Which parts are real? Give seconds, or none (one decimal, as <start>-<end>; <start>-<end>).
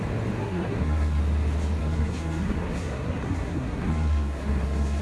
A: 0.0-0.4; 1.2-1.8